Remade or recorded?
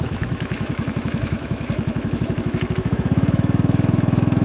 remade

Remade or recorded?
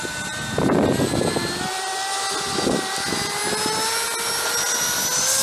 recorded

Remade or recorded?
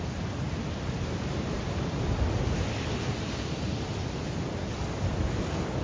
recorded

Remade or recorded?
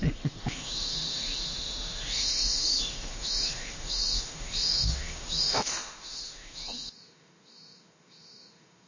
remade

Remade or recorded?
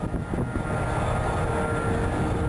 recorded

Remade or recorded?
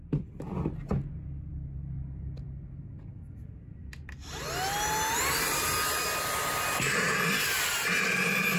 recorded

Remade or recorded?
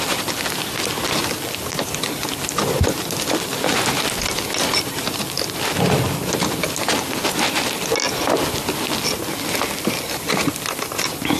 recorded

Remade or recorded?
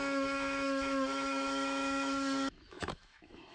remade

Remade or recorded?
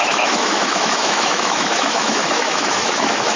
remade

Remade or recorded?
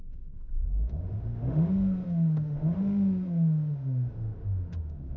remade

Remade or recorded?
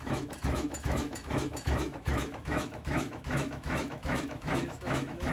remade